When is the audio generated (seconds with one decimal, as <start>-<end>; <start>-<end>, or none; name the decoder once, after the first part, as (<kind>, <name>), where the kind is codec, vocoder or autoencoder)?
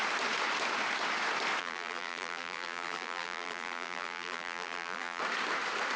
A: 1.6-5.2 (vocoder, BigVGAN v2)